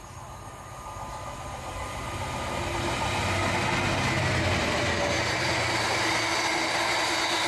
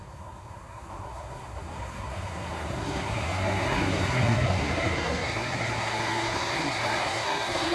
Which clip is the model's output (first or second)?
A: second